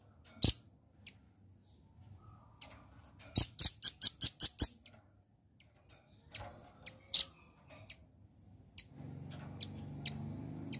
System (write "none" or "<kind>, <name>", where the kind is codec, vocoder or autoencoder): none